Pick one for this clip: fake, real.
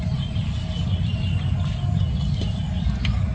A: real